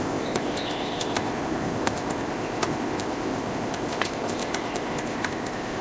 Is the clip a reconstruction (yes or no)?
yes